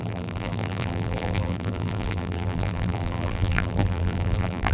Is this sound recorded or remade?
remade